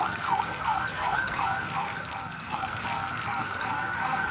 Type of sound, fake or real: fake